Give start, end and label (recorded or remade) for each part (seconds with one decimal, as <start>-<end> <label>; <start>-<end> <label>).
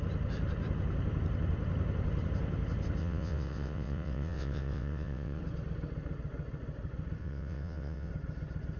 0.0-3.0 recorded; 3.0-5.4 remade; 5.4-7.2 recorded; 7.2-8.1 remade; 8.1-8.8 recorded